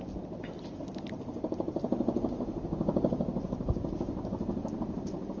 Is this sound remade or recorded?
recorded